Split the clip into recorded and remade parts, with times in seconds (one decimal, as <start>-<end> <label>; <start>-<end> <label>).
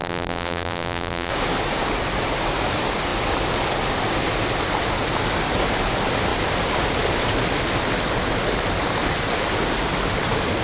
0.0-1.3 remade; 1.3-10.6 recorded